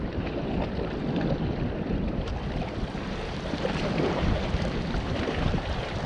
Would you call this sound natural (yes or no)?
no